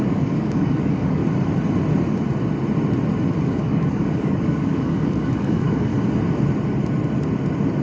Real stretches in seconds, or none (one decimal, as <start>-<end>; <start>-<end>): 1.2-3.4; 5.9-7.8